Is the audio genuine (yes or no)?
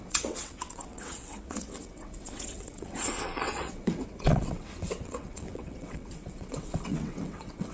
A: no